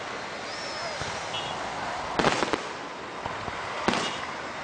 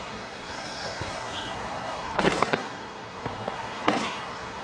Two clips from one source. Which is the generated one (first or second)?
second